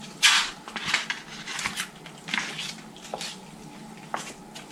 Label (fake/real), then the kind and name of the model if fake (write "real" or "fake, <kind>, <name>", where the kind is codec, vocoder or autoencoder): real